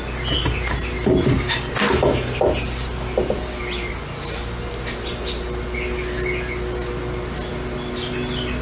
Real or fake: real